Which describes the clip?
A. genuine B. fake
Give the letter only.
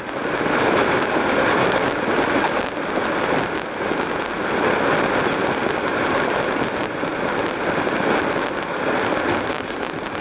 A